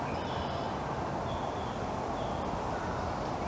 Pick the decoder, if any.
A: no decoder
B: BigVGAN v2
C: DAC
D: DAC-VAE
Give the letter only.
A